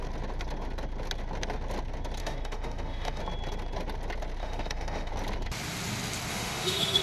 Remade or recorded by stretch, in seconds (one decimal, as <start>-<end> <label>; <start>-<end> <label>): 0.0-2.2 recorded; 2.2-3.2 remade; 3.2-4.4 recorded; 4.4-5.1 remade; 5.1-6.3 recorded; 6.3-7.0 remade

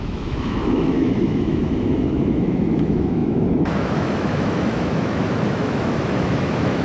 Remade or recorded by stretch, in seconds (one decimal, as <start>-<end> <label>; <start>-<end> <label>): 0.0-6.8 remade